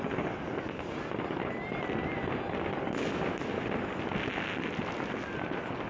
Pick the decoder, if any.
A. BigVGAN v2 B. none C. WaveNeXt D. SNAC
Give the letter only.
B